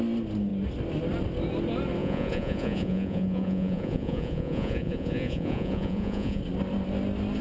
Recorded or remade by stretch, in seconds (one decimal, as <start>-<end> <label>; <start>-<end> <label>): 0.0-2.0 recorded; 2.0-6.4 remade; 6.4-7.4 recorded